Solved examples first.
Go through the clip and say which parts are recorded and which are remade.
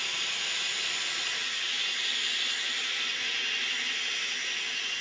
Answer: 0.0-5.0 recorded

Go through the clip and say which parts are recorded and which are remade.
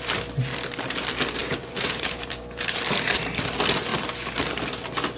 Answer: 0.0-1.4 recorded; 1.4-3.2 remade; 3.2-5.2 recorded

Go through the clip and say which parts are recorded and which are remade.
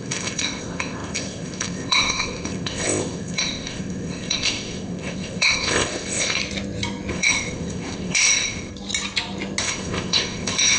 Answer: 0.0-6.4 remade; 6.4-7.1 recorded; 7.1-8.7 remade; 8.7-9.6 recorded; 9.6-10.8 remade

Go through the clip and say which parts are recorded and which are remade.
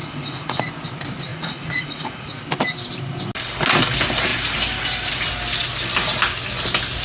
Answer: 0.0-0.6 remade; 0.6-1.3 recorded; 1.3-2.3 remade; 2.3-7.0 recorded